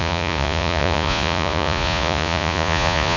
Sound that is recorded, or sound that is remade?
remade